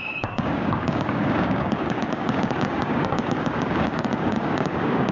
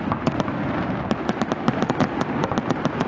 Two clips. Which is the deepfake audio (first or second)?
first